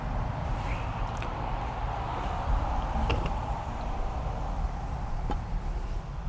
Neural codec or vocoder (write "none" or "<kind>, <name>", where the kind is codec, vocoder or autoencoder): none